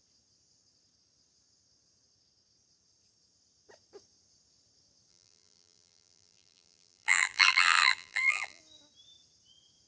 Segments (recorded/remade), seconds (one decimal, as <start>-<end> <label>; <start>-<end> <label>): 0.0-5.1 recorded; 5.1-8.6 remade; 8.6-9.9 recorded